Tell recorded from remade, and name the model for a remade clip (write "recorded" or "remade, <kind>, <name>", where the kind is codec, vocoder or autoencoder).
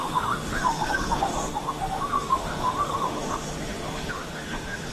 remade, autoencoder, DAC-VAE